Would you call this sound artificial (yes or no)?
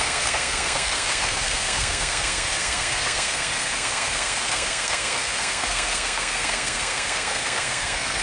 yes